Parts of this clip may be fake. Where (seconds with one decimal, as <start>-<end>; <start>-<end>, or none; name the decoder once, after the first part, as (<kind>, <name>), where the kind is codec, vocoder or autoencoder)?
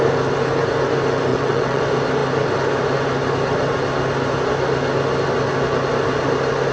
1.3-1.8 (vocoder, WaveNeXt)